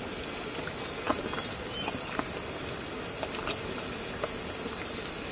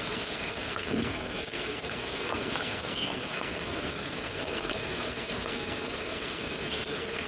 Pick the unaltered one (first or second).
first